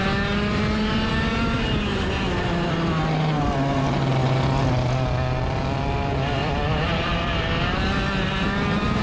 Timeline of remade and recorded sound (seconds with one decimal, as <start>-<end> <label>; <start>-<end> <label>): 0.0-6.4 recorded; 6.4-7.3 remade; 7.3-9.0 recorded